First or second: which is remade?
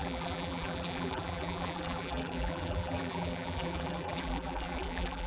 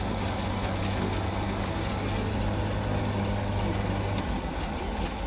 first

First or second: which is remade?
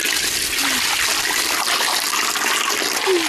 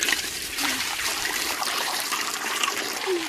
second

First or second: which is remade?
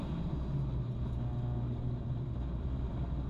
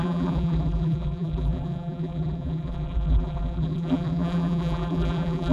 second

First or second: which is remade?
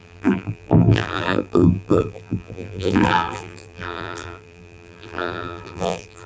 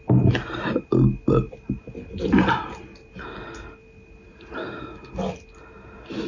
first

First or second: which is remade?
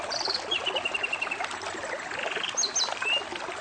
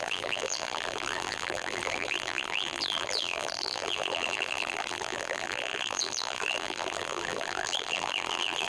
second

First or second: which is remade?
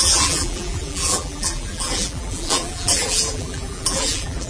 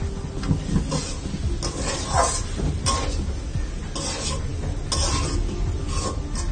first